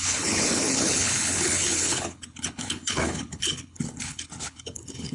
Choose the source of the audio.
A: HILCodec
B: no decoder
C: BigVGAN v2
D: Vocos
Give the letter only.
A